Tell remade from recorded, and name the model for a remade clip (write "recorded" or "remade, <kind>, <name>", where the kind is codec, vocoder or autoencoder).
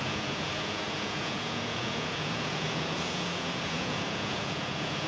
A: remade, vocoder, Vocos